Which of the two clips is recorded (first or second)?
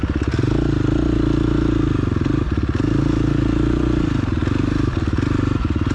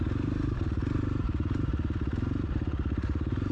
first